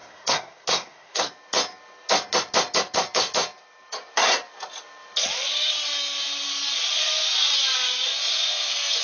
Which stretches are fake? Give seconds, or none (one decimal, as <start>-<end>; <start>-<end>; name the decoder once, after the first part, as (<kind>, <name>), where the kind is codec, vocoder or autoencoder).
0.0-1.3 (codec, SNAC)